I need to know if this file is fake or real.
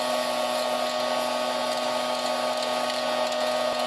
real